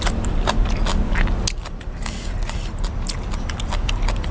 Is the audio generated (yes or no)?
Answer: no